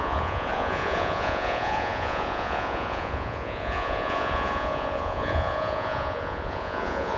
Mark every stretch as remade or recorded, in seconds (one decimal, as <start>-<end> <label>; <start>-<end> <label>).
0.0-7.2 remade